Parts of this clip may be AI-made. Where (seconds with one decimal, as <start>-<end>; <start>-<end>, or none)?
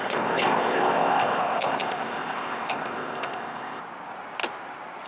0.0-3.8